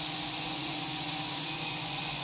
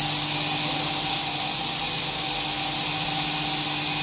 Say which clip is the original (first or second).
second